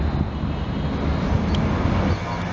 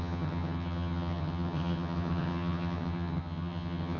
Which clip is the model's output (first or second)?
second